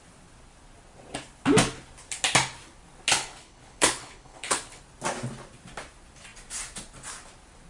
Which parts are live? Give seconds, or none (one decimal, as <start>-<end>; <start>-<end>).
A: 0.0-3.2; 4.8-7.7